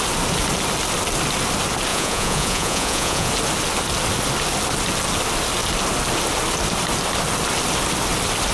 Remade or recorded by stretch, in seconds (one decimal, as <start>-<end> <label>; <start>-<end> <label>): 0.0-1.9 recorded; 1.9-3.3 remade; 3.3-8.5 recorded